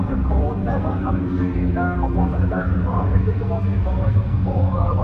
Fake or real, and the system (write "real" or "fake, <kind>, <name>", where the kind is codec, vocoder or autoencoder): fake, codec, SNAC